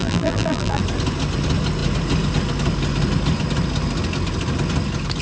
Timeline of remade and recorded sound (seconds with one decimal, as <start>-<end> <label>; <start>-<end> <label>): 0.0-0.8 remade; 0.8-5.2 recorded